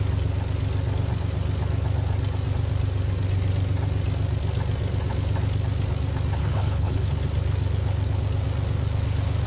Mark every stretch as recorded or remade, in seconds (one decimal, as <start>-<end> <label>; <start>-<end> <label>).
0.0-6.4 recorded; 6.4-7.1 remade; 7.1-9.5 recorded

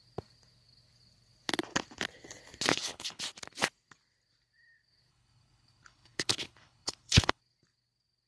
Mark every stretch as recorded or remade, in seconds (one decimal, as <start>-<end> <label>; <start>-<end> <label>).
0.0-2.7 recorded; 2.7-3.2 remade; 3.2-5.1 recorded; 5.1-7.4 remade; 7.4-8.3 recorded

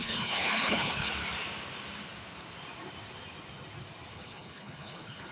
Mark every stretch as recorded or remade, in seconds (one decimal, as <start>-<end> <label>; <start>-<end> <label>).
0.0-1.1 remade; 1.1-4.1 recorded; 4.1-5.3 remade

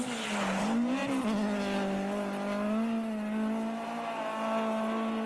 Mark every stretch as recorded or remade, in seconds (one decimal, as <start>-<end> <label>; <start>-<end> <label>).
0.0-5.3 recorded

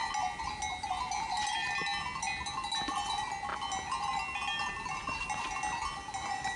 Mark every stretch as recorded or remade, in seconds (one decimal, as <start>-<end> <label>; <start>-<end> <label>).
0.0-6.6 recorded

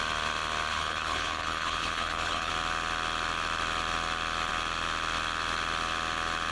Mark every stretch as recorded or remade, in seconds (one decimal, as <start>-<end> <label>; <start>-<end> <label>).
0.0-0.7 recorded; 0.7-2.5 remade; 2.5-6.5 recorded